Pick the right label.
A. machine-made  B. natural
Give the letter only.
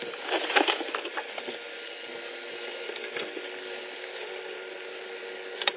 B